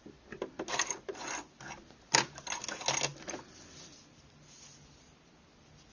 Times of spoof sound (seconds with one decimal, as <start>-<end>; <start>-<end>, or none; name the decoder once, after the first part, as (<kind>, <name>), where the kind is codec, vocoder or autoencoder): none